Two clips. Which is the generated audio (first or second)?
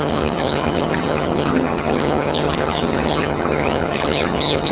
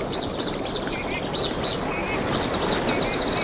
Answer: first